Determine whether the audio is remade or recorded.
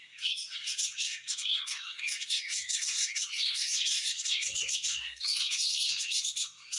remade